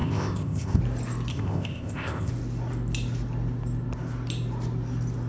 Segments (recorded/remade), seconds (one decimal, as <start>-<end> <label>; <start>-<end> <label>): 0.0-0.8 remade; 0.8-1.3 recorded; 1.3-2.3 remade; 2.3-5.3 recorded